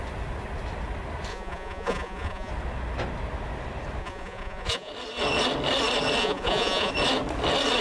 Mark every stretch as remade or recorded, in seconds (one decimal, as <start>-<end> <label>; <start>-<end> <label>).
0.0-1.3 recorded; 1.3-2.5 remade; 2.5-4.0 recorded; 4.0-4.9 remade; 4.9-6.2 recorded; 6.2-6.9 remade; 6.9-7.8 recorded